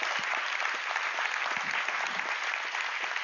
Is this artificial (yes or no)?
no